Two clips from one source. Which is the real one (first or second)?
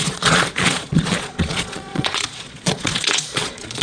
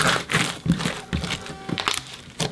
second